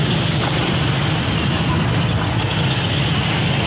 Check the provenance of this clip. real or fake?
real